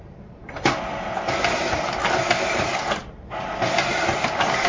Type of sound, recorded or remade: remade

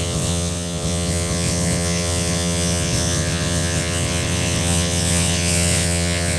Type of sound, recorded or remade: remade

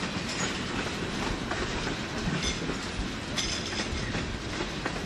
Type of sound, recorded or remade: recorded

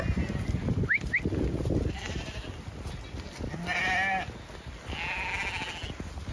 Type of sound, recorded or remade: recorded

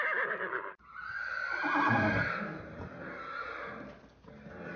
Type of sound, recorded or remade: recorded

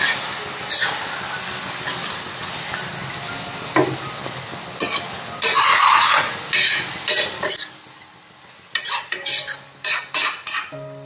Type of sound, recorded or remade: recorded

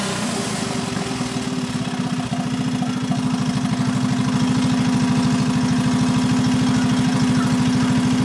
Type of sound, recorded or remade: recorded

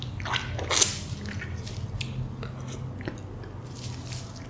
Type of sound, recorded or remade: recorded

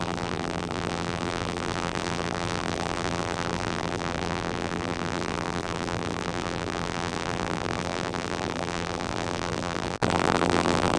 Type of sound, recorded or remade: remade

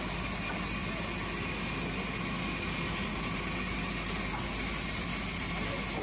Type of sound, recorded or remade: recorded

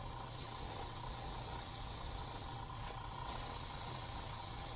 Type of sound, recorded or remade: remade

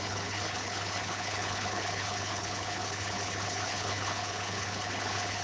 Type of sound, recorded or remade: remade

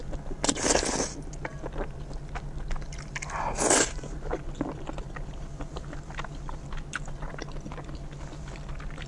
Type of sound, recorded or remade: recorded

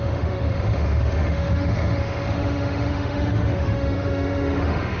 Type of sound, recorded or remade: remade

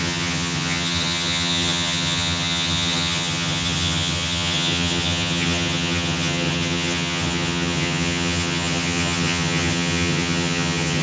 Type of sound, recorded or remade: remade